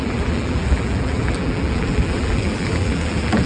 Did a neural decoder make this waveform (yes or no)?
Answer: yes